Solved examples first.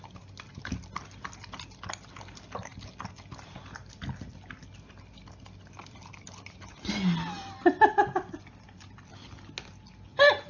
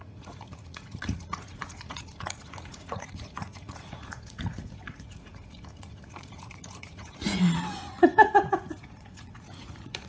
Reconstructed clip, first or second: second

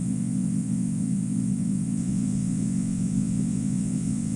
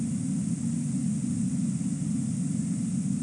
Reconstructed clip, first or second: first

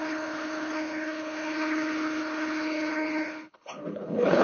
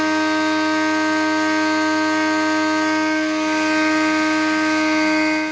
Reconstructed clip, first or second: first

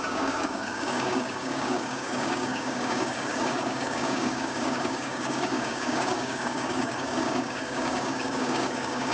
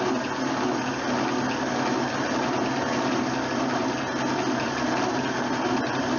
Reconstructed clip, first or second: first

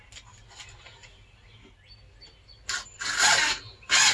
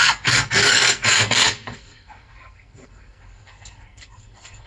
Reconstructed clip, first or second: second